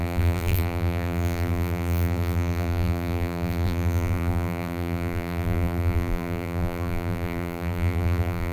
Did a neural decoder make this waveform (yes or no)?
yes